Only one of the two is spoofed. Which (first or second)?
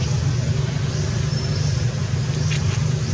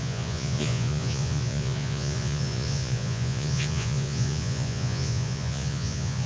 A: second